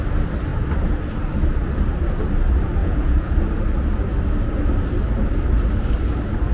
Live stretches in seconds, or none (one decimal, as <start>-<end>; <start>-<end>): 0.0-2.8; 3.4-6.5